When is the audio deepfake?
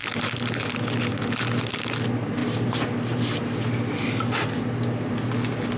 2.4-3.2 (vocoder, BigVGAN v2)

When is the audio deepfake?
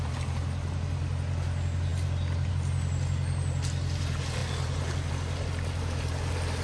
none